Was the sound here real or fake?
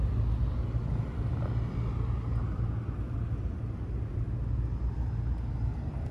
real